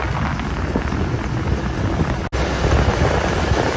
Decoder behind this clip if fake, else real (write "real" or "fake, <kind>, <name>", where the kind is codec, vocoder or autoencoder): real